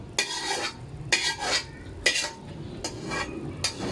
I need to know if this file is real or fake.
real